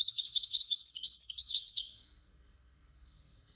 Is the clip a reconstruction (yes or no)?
yes